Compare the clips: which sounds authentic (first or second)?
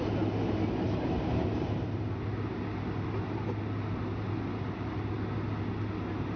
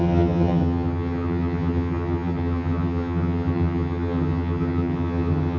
first